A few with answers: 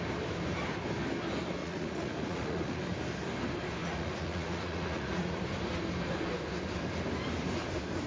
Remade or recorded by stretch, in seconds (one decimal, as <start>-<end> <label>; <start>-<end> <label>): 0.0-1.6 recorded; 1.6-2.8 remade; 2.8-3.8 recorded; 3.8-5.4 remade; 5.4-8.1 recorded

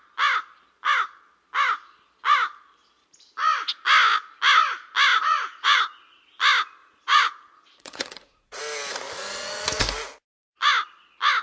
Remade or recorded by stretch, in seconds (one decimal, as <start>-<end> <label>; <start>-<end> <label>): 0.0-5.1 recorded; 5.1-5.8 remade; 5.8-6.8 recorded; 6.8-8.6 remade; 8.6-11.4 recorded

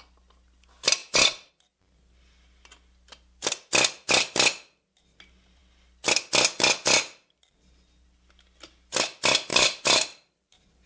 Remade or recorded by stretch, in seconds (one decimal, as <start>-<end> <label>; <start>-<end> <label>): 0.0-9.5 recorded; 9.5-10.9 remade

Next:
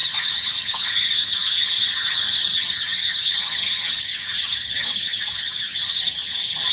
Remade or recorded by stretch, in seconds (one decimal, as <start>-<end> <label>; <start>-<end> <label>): 0.0-6.7 remade